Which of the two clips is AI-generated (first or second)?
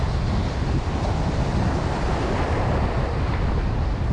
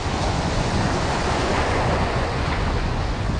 second